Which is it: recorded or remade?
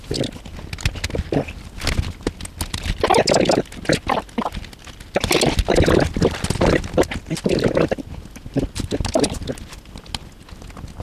recorded